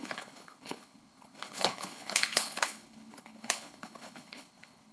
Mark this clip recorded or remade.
remade